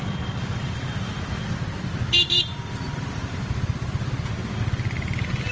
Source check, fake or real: fake